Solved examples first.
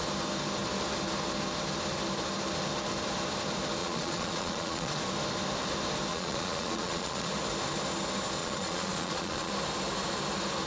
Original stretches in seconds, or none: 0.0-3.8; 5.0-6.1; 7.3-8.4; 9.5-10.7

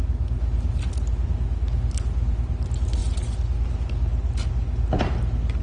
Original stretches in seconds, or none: 0.0-5.6

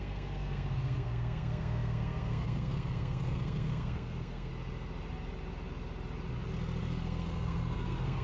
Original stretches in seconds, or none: 4.5-6.8

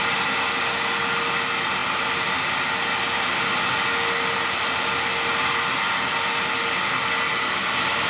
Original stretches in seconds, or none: 0.0-8.1

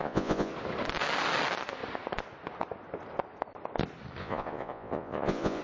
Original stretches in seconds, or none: 0.5-4.2

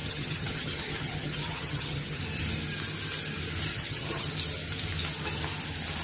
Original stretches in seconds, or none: 2.2-3.7; 4.3-6.0

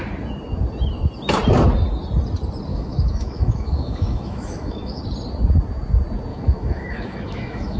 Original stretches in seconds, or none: 0.0-2.7; 5.0-6.3